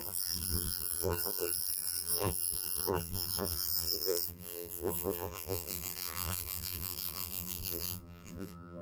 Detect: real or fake fake